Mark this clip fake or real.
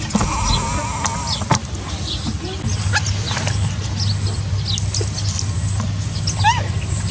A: real